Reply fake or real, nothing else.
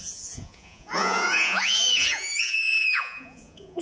fake